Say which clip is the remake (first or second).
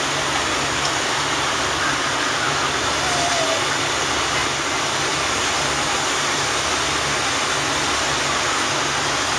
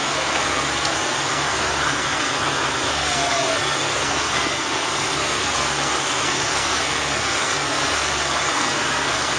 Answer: second